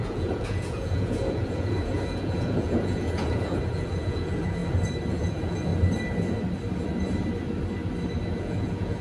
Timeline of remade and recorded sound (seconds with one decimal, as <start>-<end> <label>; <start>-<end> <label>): 0.0-4.6 remade; 4.6-5.1 recorded; 5.1-5.7 remade; 5.7-8.4 recorded; 8.4-9.0 remade